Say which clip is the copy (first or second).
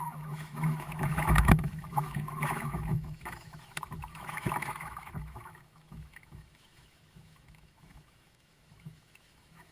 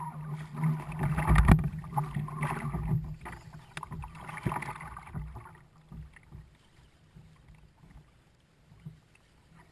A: first